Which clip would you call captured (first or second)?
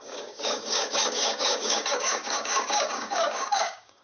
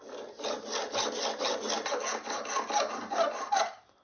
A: second